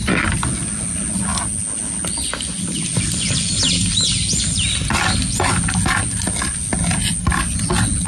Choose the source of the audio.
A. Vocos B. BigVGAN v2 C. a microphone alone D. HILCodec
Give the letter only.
C